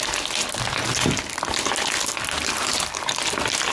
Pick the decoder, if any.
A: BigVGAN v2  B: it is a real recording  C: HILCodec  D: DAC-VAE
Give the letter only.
B